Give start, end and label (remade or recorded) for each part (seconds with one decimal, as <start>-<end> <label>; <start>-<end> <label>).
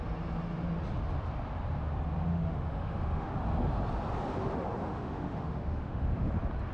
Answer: 0.0-2.3 recorded; 2.3-3.3 remade; 3.3-4.8 recorded; 4.8-6.3 remade; 6.3-6.7 recorded